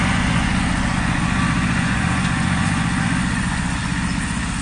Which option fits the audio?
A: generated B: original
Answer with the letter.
A